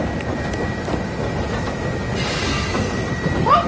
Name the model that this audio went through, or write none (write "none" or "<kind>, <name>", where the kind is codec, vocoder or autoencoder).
none